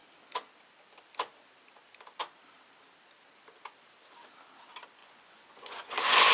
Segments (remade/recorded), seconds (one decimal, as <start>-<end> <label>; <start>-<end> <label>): 0.0-5.0 recorded; 5.0-6.3 remade